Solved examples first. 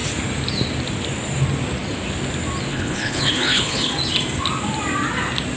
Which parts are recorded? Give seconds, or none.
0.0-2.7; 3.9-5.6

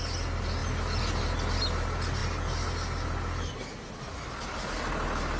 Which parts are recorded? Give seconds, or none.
0.0-5.4